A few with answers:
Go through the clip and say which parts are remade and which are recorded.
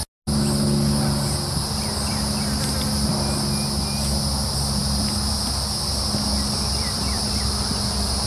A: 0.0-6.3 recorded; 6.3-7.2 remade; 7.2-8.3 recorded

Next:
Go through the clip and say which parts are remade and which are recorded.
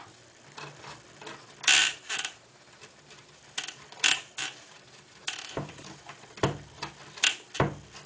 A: 0.0-1.8 recorded; 1.8-6.3 remade; 6.3-8.1 recorded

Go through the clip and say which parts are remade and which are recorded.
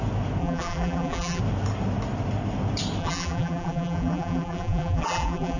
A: 0.0-0.4 recorded; 0.4-1.4 remade; 1.4-3.0 recorded; 3.0-5.6 remade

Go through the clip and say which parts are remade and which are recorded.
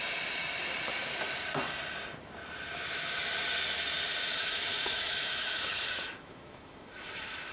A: 0.0-4.3 recorded; 4.3-7.5 remade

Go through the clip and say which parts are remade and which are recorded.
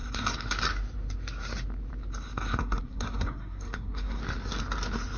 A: 0.0-2.6 recorded; 2.6-4.2 remade; 4.2-5.2 recorded